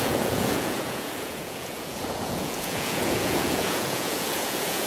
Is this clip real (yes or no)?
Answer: no